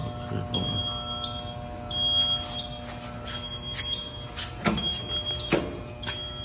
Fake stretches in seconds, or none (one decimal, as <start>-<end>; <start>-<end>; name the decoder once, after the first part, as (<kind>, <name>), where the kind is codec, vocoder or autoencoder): none